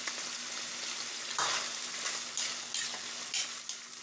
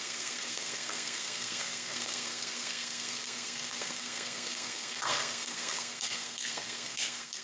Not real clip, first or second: second